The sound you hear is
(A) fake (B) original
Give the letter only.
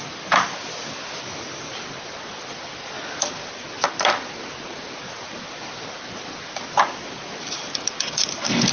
B